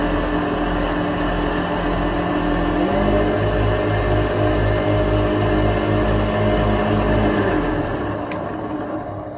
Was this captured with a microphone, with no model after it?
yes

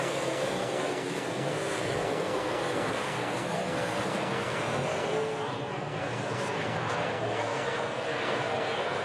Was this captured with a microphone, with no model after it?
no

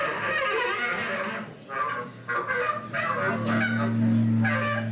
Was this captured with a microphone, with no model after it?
yes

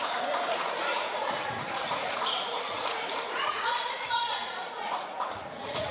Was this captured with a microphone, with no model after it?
no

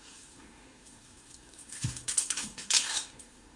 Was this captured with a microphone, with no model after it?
no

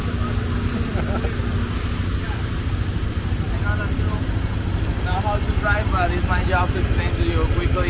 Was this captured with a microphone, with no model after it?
yes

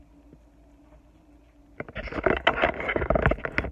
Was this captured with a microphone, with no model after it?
yes